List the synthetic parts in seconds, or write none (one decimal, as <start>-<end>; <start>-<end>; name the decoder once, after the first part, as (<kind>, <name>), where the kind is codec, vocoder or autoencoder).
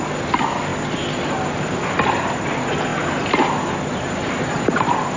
none